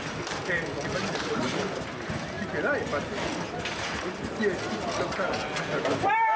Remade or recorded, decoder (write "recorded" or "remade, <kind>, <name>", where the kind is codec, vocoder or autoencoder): recorded